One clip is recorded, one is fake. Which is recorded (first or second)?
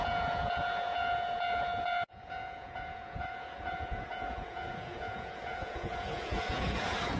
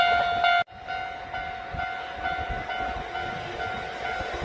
second